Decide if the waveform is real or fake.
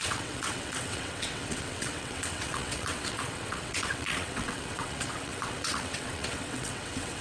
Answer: fake